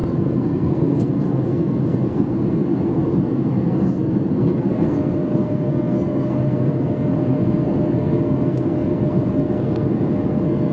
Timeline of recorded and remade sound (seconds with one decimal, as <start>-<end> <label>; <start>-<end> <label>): 0.0-10.7 remade